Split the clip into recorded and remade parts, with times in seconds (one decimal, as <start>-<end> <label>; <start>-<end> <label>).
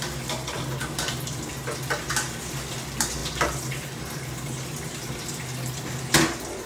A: 0.0-0.8 recorded; 0.8-2.1 remade; 2.1-6.7 recorded